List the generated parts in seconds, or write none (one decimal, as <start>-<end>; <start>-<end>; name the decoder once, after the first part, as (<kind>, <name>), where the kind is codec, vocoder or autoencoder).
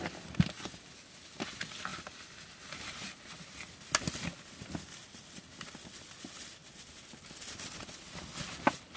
none